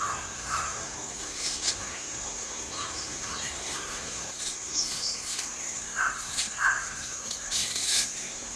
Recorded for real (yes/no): no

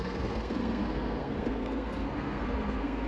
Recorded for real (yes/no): no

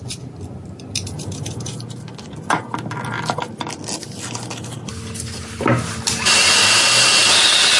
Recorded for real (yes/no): yes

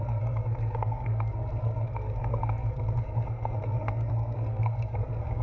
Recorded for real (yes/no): no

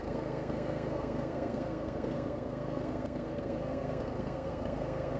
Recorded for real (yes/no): no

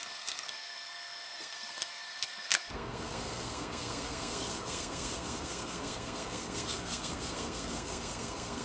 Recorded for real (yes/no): no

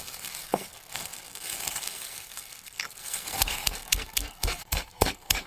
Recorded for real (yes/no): no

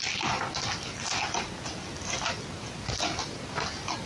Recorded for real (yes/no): yes